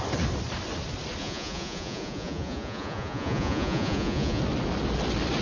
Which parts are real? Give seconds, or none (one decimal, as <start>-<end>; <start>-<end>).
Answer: 0.0-1.2; 4.4-5.4